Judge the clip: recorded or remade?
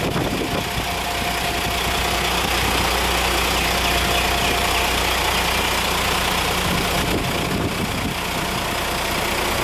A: recorded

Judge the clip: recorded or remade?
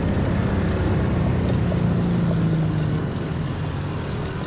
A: recorded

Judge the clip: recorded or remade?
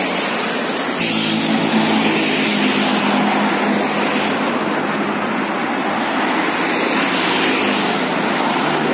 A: recorded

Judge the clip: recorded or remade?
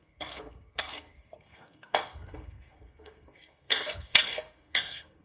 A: remade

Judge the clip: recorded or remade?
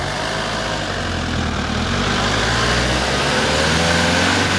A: recorded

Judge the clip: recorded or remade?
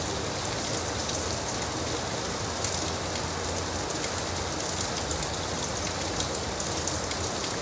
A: recorded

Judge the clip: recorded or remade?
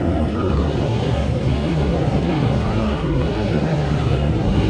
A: remade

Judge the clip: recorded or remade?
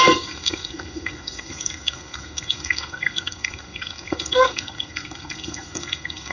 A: remade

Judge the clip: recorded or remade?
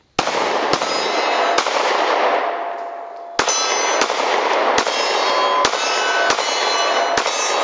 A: recorded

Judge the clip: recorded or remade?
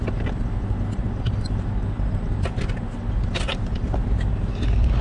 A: recorded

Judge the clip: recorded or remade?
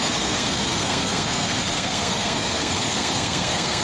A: remade